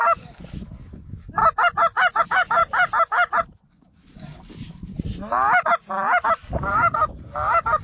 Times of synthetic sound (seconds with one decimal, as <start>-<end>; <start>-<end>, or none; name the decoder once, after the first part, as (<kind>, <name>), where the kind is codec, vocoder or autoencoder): 0.0-1.4 (codec, DAC); 2.2-2.6; 3.4-4.9; 6.4-7.8